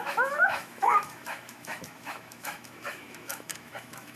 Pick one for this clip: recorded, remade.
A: remade